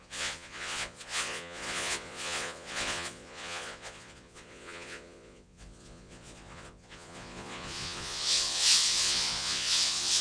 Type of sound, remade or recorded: remade